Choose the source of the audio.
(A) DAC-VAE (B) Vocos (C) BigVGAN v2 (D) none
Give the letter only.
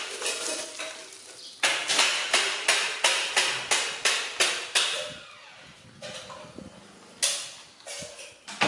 D